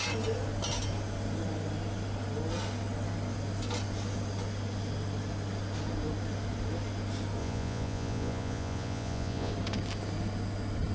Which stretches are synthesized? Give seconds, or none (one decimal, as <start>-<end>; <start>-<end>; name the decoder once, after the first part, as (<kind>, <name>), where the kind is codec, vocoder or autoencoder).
7.4-9.5 (vocoder, Vocos)